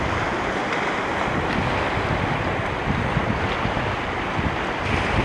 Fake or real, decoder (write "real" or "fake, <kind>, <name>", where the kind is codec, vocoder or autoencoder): real